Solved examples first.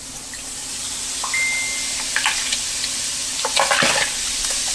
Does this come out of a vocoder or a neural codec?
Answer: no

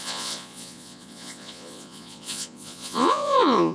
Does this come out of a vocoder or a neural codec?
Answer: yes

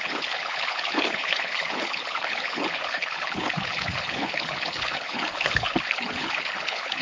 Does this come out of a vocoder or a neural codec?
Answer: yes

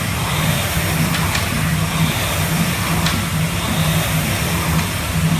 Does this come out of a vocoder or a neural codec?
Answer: no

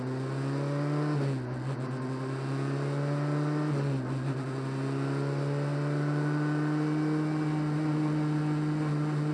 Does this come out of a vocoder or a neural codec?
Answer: no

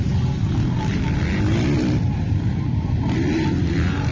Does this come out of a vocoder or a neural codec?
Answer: no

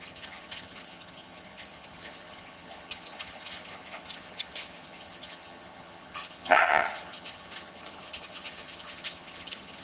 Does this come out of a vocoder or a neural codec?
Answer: yes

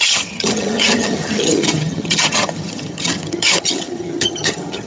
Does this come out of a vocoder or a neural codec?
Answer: yes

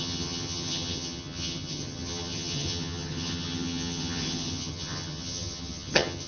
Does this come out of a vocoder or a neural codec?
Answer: yes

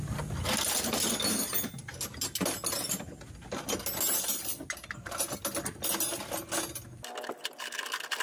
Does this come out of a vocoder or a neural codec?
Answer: no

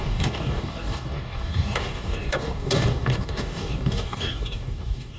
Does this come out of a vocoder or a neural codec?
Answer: yes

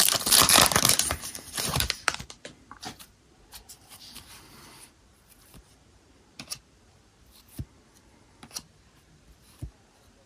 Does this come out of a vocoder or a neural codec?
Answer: yes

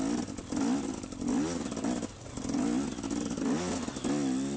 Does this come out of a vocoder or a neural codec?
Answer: no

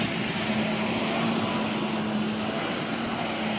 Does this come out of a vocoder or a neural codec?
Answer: no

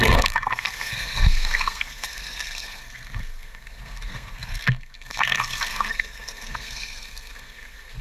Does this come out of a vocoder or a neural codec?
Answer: yes